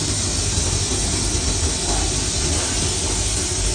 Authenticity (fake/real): real